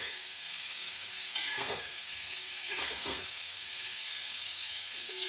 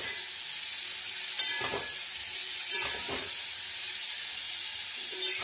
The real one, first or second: second